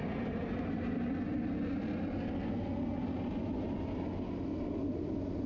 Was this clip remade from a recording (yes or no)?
no